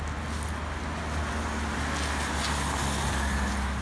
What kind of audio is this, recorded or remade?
recorded